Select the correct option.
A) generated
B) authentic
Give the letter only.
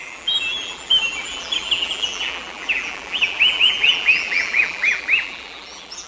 A